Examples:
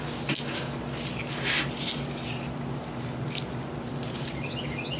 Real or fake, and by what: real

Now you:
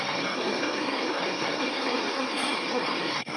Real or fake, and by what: fake, codec, SNAC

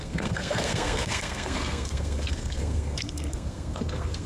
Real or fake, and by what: fake, codec, SNAC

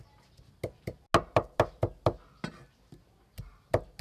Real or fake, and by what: real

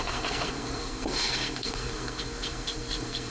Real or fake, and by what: fake, codec, SNAC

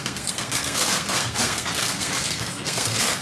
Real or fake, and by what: fake, codec, SNAC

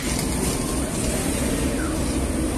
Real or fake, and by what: real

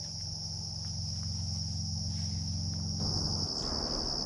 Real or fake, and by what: real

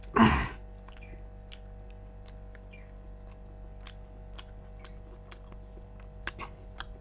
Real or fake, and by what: real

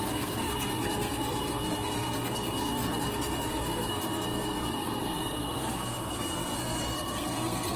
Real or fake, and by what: fake, codec, SNAC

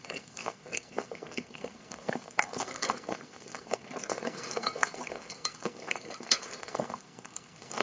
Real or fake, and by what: fake, codec, SNAC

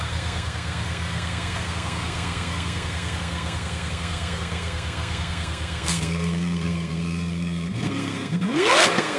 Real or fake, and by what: fake, codec, SNAC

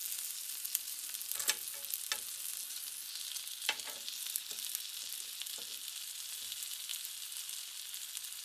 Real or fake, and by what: real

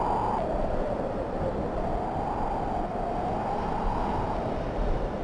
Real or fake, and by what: real